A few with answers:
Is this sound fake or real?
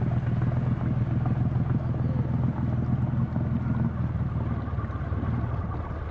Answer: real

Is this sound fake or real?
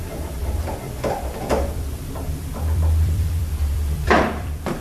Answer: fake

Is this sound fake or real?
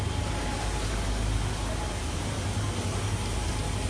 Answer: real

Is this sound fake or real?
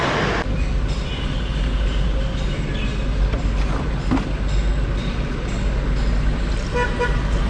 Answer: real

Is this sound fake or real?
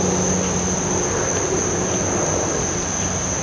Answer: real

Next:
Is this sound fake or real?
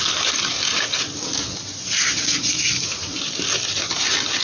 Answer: real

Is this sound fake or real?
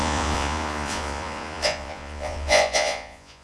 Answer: fake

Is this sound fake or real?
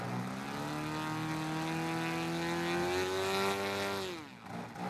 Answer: real